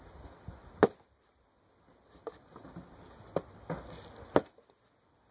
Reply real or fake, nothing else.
real